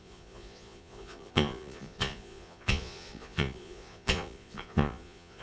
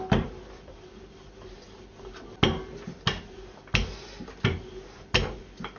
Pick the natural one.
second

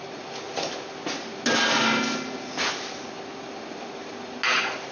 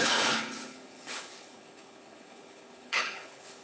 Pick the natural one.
first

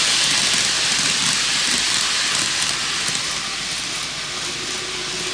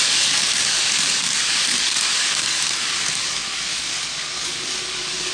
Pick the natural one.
first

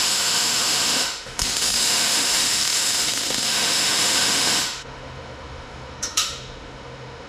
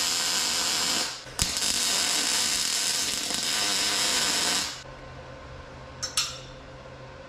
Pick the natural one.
second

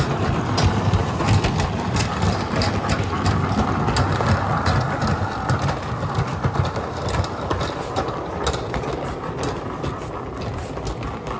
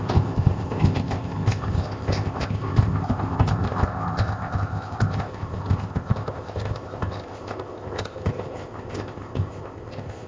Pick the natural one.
first